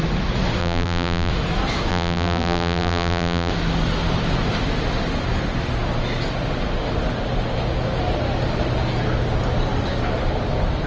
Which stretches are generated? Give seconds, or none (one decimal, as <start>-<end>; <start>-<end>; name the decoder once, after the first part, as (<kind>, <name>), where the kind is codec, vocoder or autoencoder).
0.6-1.3 (vocoder, BigVGAN v2); 1.9-3.5